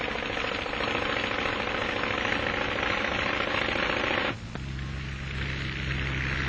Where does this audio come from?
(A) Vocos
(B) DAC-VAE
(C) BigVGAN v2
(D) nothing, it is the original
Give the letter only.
D